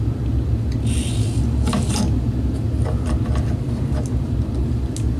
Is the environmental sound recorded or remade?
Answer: recorded